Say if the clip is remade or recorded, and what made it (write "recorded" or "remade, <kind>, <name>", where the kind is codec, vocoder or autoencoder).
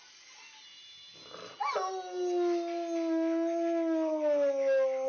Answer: recorded